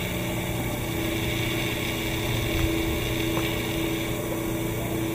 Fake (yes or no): no